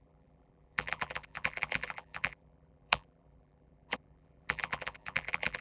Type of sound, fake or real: fake